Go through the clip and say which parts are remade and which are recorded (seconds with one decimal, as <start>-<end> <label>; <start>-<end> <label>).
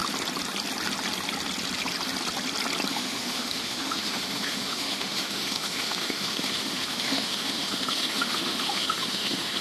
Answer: 0.0-2.9 recorded; 2.9-9.6 remade